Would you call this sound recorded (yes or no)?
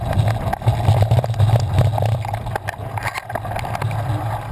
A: yes